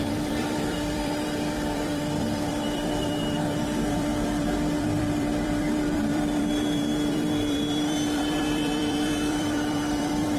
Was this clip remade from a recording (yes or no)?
yes